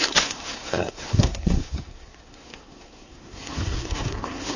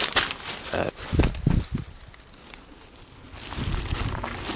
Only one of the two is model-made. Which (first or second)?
first